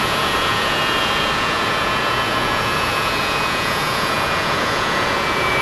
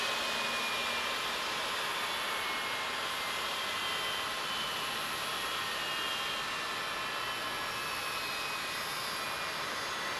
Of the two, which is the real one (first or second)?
second